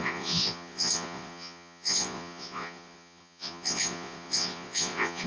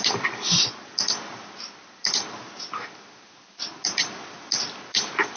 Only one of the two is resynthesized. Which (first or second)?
first